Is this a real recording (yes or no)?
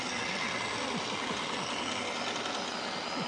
yes